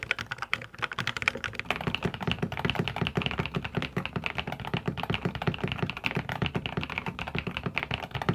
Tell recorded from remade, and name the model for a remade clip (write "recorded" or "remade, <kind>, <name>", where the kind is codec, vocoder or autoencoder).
recorded